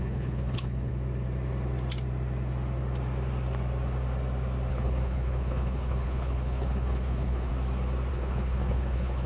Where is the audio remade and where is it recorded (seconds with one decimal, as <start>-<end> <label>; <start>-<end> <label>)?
0.0-0.9 remade; 0.9-4.7 recorded; 4.7-7.5 remade; 7.5-8.1 recorded; 8.1-9.3 remade